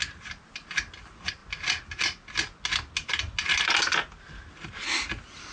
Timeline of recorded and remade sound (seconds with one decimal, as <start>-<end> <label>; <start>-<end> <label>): 0.0-5.5 recorded